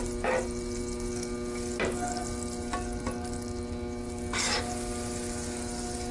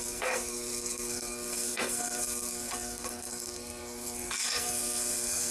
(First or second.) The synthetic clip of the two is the second